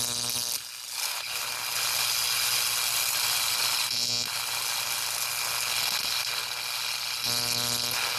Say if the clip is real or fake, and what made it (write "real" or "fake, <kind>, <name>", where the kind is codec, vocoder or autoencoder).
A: real